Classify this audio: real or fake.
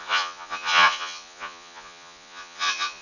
fake